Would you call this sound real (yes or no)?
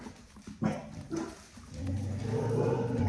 yes